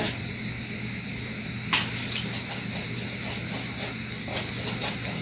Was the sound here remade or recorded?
recorded